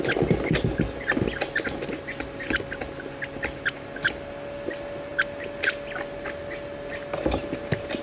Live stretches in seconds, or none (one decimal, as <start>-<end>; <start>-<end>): 0.0-8.0